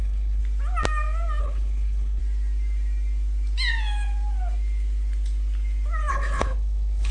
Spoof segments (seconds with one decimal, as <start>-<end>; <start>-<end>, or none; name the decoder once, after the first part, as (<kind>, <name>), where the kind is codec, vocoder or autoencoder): 0.0-0.4 (codec, HILCodec); 1.4-2.2; 6.1-7.1